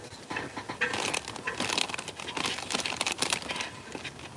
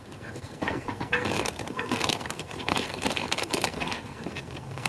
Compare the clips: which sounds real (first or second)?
first